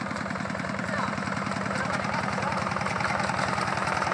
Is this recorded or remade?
remade